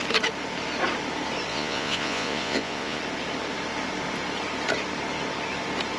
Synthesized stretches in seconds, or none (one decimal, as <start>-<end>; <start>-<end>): 1.5-3.0